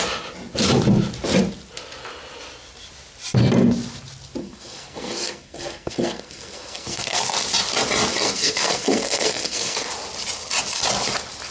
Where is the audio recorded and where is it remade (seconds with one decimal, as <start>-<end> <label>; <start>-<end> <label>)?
0.0-4.4 recorded; 4.4-7.2 remade; 7.2-8.1 recorded; 8.1-9.9 remade; 9.9-11.5 recorded